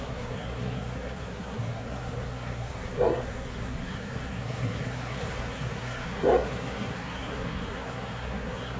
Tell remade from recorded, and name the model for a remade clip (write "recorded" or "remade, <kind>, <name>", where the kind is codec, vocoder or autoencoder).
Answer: remade, codec, SNAC